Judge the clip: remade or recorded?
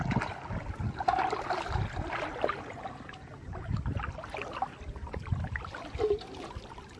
recorded